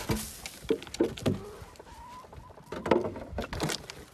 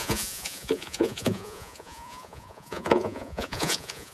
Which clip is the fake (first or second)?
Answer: second